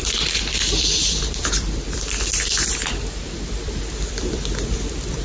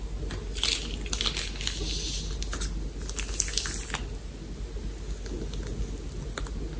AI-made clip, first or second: first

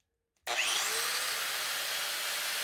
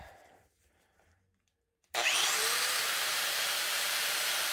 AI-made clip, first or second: second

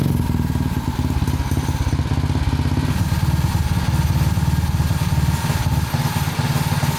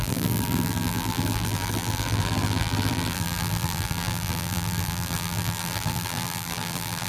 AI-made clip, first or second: second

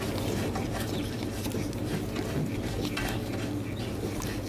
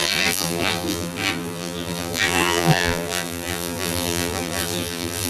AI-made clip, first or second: second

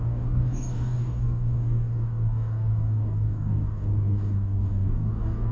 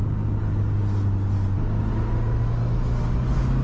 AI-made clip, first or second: first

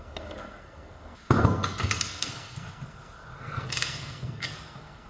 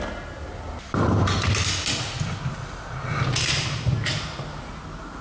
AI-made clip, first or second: first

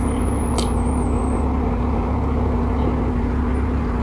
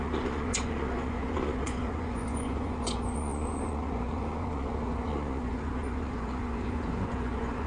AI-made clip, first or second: second